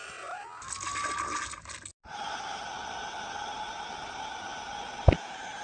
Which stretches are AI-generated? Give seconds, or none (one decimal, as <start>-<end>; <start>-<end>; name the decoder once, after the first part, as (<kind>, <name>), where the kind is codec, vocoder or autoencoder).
none